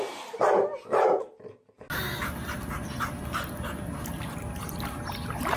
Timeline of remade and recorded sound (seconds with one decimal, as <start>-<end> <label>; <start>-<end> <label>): 0.0-5.6 recorded